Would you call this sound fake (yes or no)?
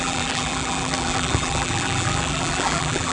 yes